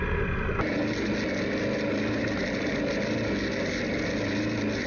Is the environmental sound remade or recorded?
recorded